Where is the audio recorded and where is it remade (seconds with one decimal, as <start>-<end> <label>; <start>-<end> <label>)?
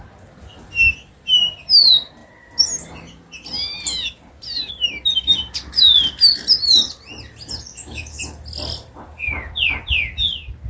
0.0-7.7 recorded; 7.7-8.2 remade; 8.2-10.7 recorded